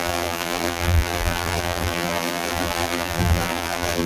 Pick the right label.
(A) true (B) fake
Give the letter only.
B